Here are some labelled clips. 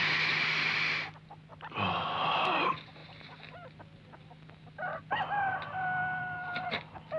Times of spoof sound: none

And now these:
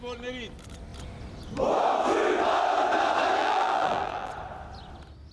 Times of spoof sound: 3.4-4.3 (vocoder, BigVGAN v2)

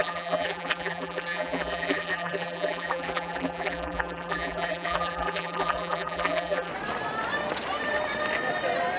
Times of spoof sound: 0.0-6.7 (vocoder, BigVGAN v2)

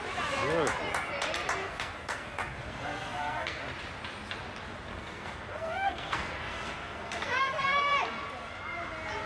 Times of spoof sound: 1.6-3.6 (codec, SNAC); 4.9-7.9

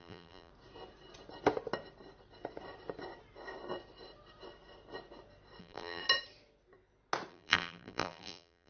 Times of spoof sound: 0.0-0.5 (vocoder, BigVGAN v2); 5.6-6.0; 7.3-8.7

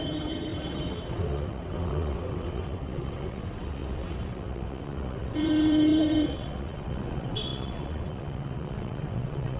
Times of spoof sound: 0.0-9.6 (vocoder, WaveNeXt)

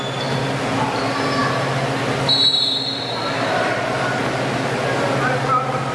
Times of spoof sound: none

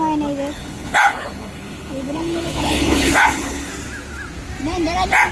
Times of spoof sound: 0.5-3.7 (codec, HILCodec)